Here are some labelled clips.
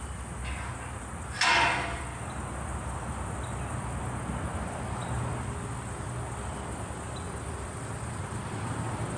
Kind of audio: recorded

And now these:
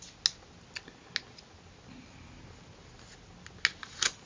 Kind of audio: recorded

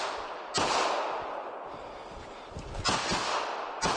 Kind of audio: recorded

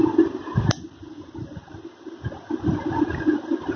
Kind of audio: recorded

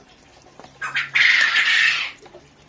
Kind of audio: recorded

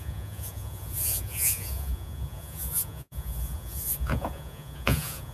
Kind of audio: remade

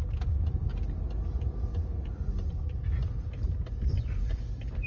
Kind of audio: recorded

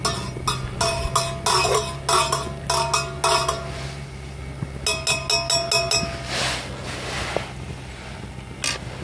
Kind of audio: recorded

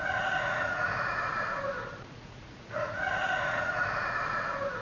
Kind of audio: remade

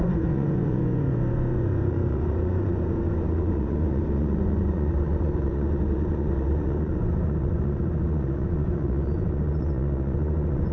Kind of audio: remade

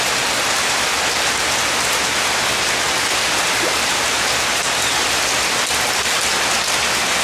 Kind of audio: recorded